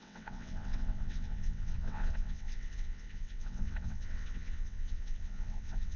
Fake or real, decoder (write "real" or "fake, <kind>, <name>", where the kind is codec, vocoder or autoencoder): fake, vocoder, WaveNeXt